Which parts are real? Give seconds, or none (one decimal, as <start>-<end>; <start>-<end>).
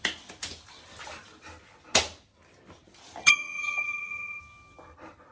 0.0-3.2; 4.4-5.3